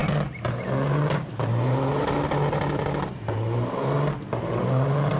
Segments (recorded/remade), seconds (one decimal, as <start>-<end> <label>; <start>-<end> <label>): 0.0-5.2 recorded